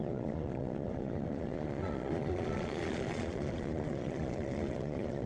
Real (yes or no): no